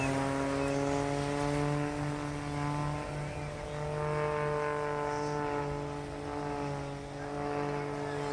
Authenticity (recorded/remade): recorded